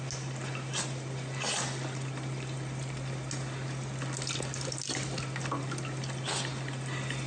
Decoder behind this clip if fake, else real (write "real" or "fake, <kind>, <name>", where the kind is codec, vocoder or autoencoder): real